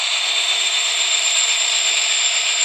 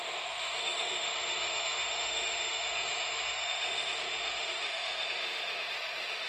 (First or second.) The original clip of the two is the first